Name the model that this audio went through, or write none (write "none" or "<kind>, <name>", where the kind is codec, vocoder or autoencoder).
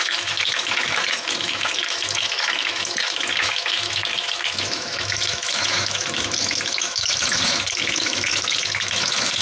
autoencoder, DAC-VAE